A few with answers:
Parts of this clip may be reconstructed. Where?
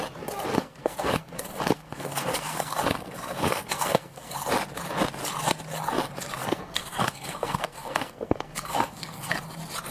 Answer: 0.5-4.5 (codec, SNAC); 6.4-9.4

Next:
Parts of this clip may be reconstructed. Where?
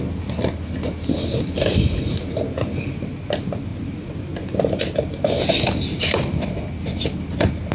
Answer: none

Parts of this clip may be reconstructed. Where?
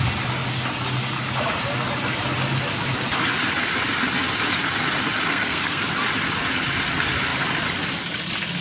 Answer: 5.3-5.9 (codec, SNAC)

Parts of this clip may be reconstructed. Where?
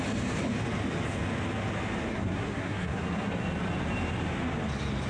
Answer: 2.1-3.3 (codec, SNAC)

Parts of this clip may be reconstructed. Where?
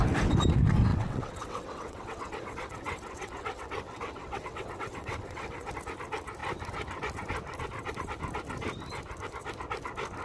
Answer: 0.9-5.7 (vocoder, WaveNeXt)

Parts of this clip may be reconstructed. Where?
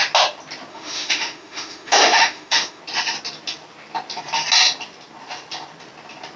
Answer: 0.7-2.8 (autoencoder, DAC-VAE)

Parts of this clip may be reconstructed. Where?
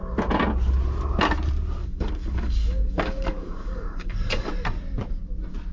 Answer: 1.8-4.5 (codec, DAC)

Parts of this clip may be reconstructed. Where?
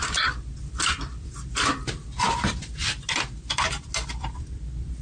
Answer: none